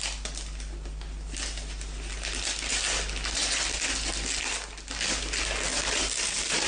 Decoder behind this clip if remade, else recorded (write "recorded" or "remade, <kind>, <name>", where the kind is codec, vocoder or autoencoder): recorded